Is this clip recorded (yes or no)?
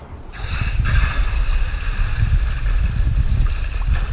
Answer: yes